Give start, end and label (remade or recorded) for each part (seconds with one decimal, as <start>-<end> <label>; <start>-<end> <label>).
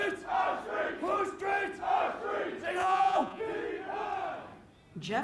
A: 0.0-2.8 recorded; 2.8-3.4 remade; 3.4-5.2 recorded